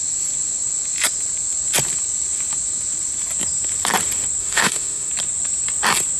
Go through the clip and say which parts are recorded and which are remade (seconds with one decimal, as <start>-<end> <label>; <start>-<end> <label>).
0.0-4.4 recorded; 4.4-5.1 remade; 5.1-6.2 recorded